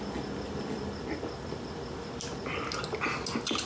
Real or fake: real